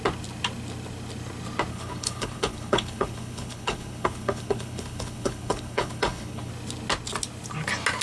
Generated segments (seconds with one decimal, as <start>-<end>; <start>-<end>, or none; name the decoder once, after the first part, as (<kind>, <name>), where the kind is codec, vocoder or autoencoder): 1.7-6.5 (codec, HILCodec)